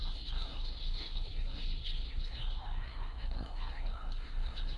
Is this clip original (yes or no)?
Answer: no